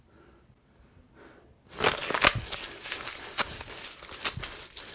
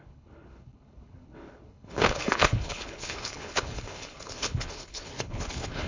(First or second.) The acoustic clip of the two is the first